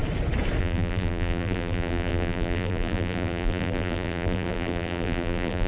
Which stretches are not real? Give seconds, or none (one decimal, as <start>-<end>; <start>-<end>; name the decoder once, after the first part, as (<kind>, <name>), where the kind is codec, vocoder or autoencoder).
0.6-5.7 (vocoder, BigVGAN v2)